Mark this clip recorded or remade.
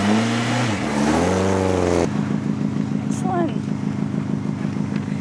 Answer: recorded